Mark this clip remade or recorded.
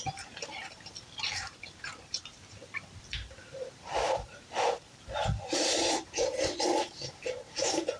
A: remade